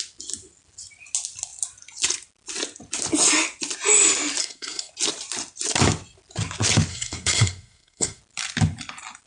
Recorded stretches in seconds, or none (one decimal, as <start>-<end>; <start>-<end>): 0.0-4.4; 4.9-6.9; 8.2-9.3